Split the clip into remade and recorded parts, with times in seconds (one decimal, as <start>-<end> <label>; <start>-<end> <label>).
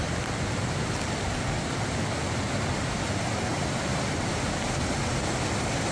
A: 0.0-5.9 recorded